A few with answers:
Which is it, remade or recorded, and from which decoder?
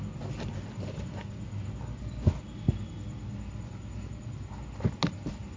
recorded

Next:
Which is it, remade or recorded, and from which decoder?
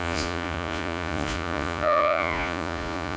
remade, vocoder, Vocos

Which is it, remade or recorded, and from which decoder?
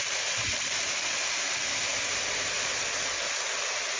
remade, vocoder, BigVGAN v2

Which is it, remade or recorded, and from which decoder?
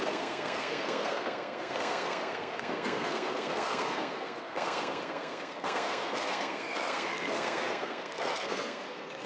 remade, codec, SNAC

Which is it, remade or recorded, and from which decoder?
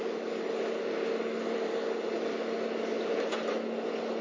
recorded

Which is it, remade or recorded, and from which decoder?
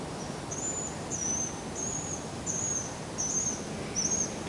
recorded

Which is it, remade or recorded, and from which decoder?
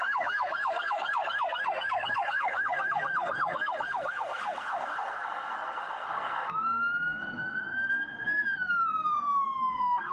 remade, codec, SNAC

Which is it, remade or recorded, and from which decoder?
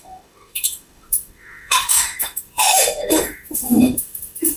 remade, autoencoder, DAC-VAE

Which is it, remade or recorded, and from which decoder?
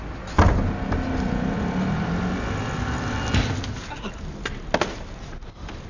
recorded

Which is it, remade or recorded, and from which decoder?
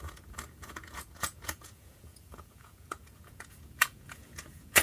remade, vocoder, Vocos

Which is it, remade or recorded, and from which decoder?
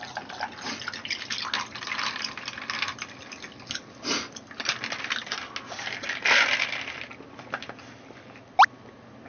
recorded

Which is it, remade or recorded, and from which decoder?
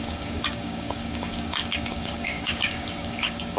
remade, codec, DAC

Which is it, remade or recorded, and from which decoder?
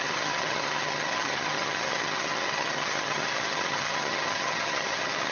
remade, vocoder, HiFi-GAN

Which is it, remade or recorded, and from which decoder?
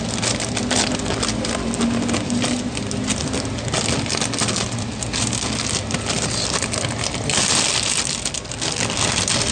recorded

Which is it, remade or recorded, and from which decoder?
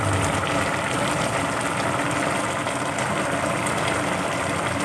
recorded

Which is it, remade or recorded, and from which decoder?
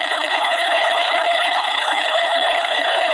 remade, codec, HILCodec